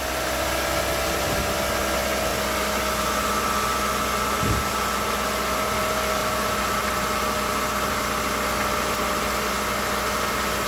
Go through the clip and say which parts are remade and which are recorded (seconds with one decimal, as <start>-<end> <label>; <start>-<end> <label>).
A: 0.0-10.7 recorded